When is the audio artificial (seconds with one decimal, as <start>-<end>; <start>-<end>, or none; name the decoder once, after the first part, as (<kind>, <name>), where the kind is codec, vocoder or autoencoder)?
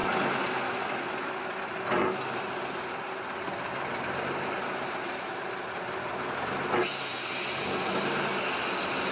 none